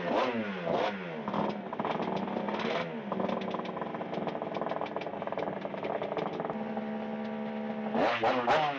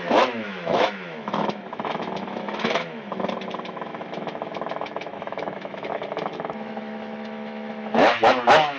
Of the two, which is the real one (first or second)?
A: first